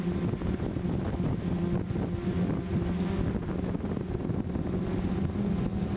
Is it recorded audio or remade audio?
recorded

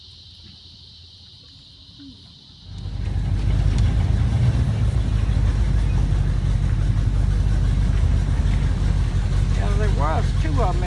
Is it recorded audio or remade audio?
recorded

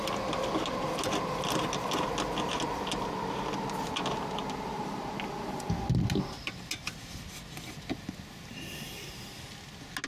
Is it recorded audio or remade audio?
recorded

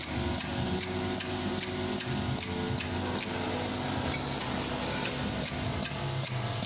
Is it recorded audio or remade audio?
recorded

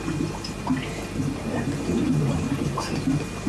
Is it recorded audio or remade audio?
recorded